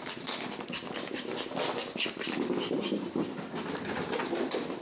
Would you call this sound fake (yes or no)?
no